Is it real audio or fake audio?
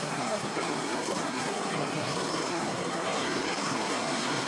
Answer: fake